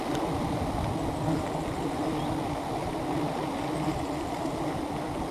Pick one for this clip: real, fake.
real